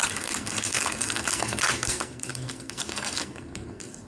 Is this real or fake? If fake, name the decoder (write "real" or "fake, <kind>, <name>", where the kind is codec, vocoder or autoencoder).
fake, codec, SNAC